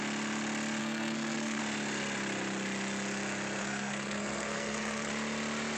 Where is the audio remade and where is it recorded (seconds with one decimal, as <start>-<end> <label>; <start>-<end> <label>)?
0.0-0.8 recorded; 0.8-1.6 remade; 1.6-3.6 recorded; 3.6-5.1 remade; 5.1-5.8 recorded

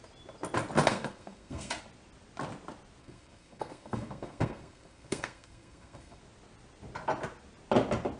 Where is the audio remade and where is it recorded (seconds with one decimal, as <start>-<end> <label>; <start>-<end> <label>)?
0.0-0.9 recorded; 0.9-1.8 remade; 1.8-3.0 recorded; 3.0-6.2 remade; 6.2-8.2 recorded

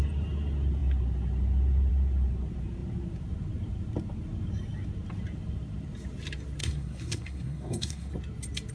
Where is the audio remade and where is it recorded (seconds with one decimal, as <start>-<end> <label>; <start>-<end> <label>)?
0.0-6.6 recorded; 6.6-8.1 remade; 8.1-8.7 recorded

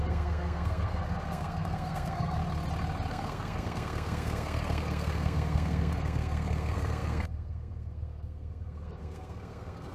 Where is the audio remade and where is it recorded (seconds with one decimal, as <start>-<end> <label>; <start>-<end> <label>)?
0.0-2.4 remade; 2.4-3.1 recorded; 3.1-9.9 remade

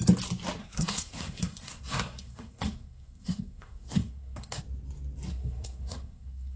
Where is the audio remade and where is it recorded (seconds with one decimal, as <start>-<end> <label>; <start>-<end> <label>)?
0.0-0.6 recorded; 0.6-4.6 remade; 4.6-5.3 recorded; 5.3-6.6 remade

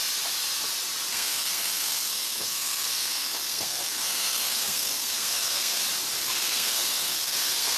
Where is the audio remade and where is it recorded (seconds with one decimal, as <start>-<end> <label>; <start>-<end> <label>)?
0.0-1.1 recorded; 1.1-5.8 remade; 5.8-6.2 recorded; 6.2-7.8 remade

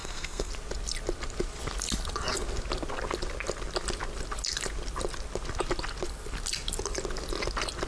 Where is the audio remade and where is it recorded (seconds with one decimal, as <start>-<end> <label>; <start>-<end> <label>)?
0.0-0.5 remade; 0.5-7.9 recorded